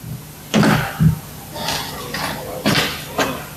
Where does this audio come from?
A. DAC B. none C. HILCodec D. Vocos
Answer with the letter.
B